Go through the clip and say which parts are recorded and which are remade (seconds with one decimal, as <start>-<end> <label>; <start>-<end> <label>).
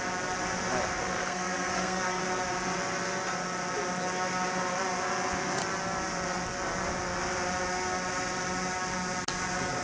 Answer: 0.0-1.0 recorded; 1.0-2.2 remade; 2.2-9.8 recorded